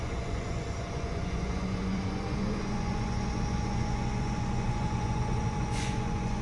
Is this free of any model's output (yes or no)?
no